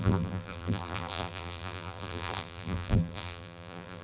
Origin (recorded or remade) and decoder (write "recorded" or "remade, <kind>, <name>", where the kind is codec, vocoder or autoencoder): remade, vocoder, BigVGAN v2